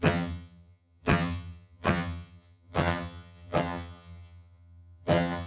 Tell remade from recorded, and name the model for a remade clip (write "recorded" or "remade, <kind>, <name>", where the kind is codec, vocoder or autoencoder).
remade, vocoder, HiFi-GAN